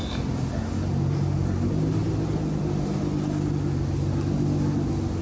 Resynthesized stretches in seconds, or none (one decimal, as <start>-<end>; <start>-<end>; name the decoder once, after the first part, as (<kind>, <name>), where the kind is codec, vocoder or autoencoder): none

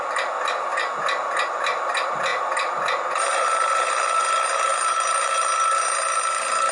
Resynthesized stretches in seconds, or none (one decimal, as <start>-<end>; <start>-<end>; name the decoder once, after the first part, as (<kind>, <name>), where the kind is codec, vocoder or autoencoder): none

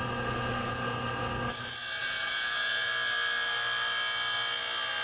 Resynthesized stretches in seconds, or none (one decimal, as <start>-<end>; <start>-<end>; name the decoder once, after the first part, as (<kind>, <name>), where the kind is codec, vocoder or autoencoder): 2.0-2.9 (vocoder, Vocos)

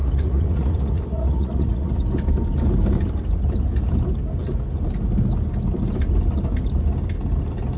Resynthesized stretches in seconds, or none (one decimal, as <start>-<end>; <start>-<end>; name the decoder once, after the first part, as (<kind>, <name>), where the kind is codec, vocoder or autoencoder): 0.0-2.0 (vocoder, Vocos)

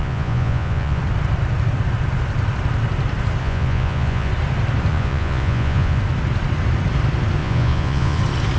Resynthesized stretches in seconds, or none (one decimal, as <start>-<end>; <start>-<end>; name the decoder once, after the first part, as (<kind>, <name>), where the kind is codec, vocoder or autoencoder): 0.0-1.0 (vocoder, Vocos); 3.4-4.3; 4.9-6.0; 7.4-8.2